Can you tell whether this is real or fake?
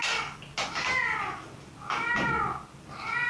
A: real